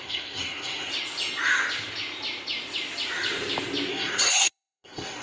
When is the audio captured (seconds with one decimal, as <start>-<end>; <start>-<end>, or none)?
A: 0.9-3.9